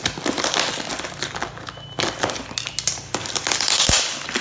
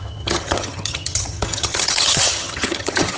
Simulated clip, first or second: second